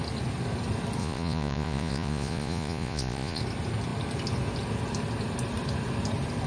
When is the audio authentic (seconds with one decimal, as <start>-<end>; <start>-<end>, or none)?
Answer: 0.0-1.0; 3.4-6.5